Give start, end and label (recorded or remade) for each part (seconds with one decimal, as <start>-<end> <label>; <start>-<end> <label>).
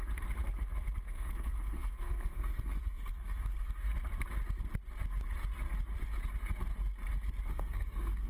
0.0-1.1 recorded; 1.1-3.9 remade; 3.9-7.5 recorded; 7.5-8.3 remade